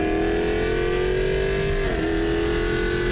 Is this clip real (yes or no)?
yes